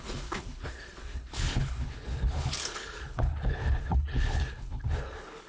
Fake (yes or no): yes